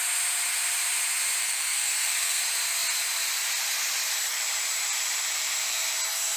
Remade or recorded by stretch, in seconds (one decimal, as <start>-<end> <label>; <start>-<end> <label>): 0.0-1.4 recorded; 1.4-2.4 remade; 2.4-6.4 recorded